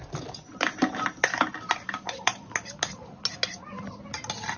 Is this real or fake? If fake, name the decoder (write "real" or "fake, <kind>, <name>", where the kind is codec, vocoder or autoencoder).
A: real